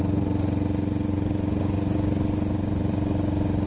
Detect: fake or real real